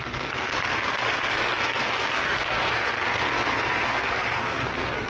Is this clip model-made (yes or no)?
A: yes